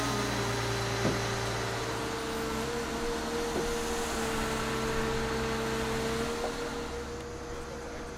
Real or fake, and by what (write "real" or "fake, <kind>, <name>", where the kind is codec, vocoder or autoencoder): real